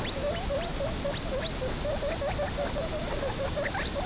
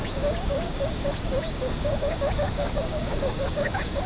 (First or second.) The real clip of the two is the first